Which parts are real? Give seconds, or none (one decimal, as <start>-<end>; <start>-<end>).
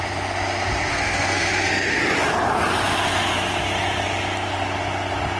0.0-0.9; 2.0-5.4